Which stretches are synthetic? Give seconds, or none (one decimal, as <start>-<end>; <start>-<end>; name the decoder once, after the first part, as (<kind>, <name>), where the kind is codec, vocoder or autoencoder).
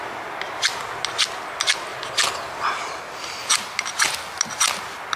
1.9-3.0 (vocoder, BigVGAN v2)